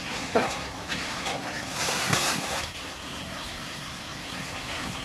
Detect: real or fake fake